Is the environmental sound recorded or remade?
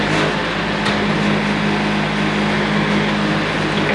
recorded